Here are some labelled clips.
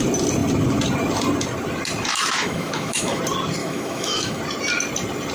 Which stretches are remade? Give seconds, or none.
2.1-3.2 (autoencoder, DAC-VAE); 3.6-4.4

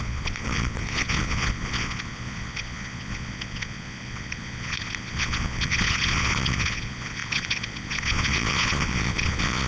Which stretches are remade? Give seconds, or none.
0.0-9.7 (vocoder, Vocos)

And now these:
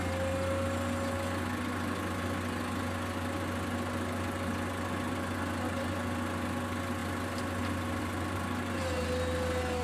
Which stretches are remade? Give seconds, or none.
none

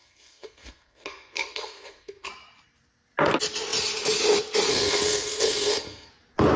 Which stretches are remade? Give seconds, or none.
0.0-2.3 (codec, SNAC); 4.7-6.1

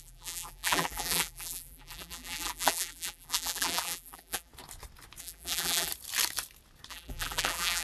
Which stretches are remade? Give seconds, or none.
0.0-4.5 (vocoder, BigVGAN v2); 5.2-5.9; 6.9-7.8